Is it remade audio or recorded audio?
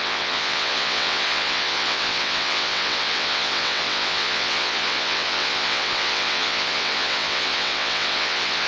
remade